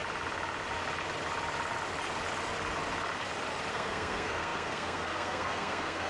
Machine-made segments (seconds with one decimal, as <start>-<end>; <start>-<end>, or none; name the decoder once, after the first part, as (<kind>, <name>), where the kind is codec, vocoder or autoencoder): 3.7-6.1 (codec, SNAC)